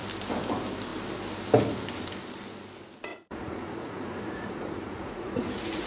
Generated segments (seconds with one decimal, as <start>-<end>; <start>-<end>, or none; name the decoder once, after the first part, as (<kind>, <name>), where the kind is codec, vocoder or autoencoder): 3.1-5.9 (vocoder, Vocos)